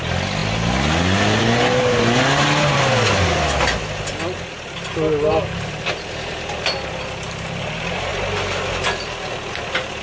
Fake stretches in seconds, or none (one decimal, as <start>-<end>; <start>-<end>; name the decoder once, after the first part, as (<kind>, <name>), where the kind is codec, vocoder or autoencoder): none